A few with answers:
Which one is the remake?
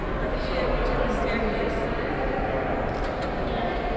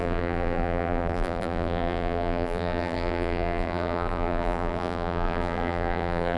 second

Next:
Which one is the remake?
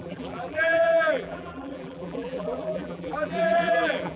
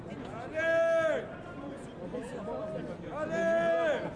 first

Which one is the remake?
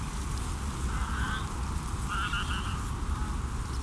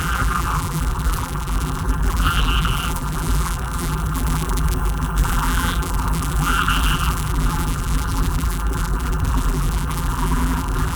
second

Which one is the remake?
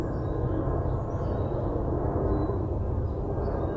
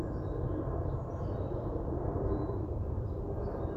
second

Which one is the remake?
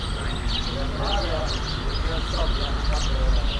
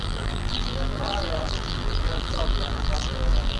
second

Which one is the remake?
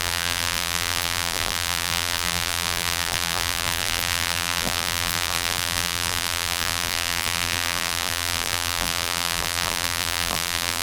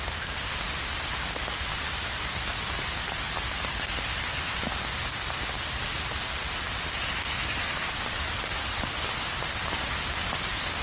first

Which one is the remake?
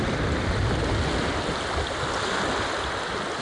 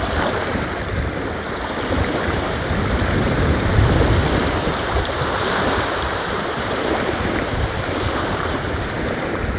second